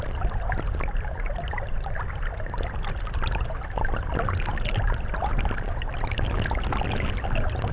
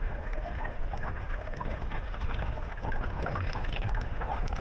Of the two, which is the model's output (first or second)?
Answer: second